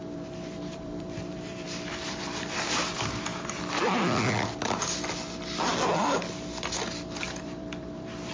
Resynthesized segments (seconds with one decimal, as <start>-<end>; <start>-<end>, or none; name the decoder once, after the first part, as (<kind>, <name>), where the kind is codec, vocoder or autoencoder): 0.0-3.3 (vocoder, BigVGAN v2); 7.4-8.3